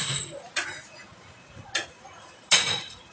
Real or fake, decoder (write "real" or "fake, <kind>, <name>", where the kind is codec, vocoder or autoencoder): fake, vocoder, Vocos